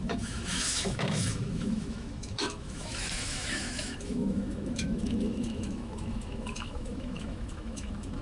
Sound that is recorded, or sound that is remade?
remade